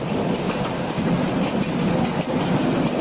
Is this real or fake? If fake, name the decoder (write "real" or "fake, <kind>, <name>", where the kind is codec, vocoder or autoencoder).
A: real